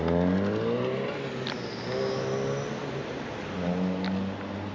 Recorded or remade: recorded